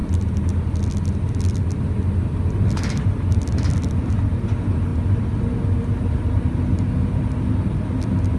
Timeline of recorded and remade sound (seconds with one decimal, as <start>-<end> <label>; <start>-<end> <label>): 0.0-8.4 recorded